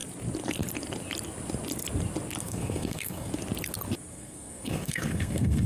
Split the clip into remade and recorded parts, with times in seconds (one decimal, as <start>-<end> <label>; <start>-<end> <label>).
0.0-2.4 recorded; 2.4-3.3 remade; 3.3-4.1 recorded; 4.1-5.7 remade